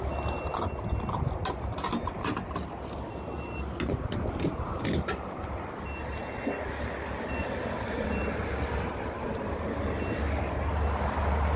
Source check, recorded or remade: recorded